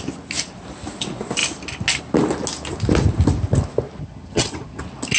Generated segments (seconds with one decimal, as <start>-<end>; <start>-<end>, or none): 4.0-4.8